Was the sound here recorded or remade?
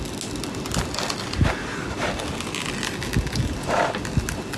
recorded